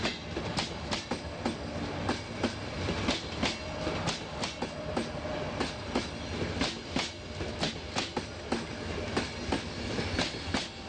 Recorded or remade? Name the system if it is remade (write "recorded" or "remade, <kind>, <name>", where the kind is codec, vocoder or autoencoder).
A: recorded